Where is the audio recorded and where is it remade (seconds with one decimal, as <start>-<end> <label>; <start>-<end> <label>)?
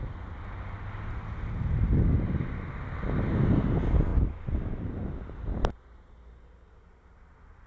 0.0-4.1 recorded; 4.1-4.9 remade; 4.9-7.7 recorded